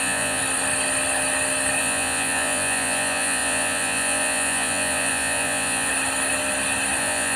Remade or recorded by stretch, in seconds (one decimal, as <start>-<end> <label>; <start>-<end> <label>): 0.0-0.4 remade; 0.4-1.8 recorded; 1.8-5.9 remade; 5.9-7.0 recorded; 7.0-7.4 remade

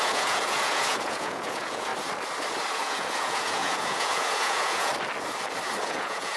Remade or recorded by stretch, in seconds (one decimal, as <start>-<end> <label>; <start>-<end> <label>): 0.0-1.9 remade; 1.9-2.7 recorded; 2.7-4.9 remade; 4.9-5.8 recorded; 5.8-6.4 remade

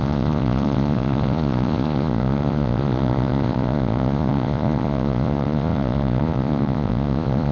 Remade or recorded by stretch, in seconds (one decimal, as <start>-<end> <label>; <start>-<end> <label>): 0.0-7.5 remade

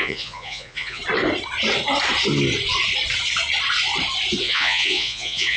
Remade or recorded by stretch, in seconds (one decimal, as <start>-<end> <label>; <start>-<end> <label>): 0.0-1.0 remade; 1.0-4.4 recorded; 4.4-5.6 remade

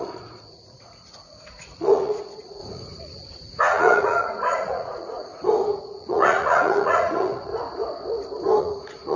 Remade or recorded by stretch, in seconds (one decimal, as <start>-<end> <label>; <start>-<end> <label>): 0.0-5.3 remade; 5.3-5.9 recorded; 5.9-7.5 remade; 7.5-8.6 recorded; 8.6-9.2 remade